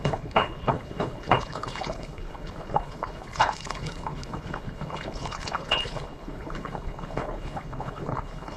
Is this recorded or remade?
remade